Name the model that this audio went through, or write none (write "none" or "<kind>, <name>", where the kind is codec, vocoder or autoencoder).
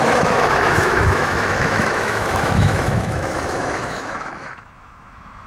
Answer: autoencoder, DAC-VAE